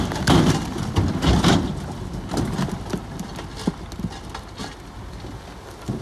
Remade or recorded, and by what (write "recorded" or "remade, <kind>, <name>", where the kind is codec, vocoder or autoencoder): recorded